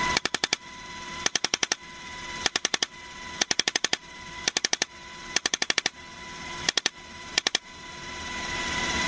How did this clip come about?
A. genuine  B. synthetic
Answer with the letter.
B